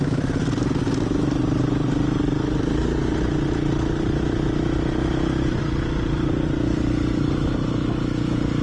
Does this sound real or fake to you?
real